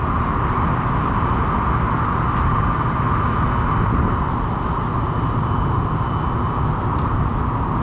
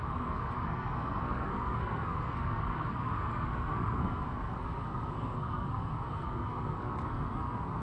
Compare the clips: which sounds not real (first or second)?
second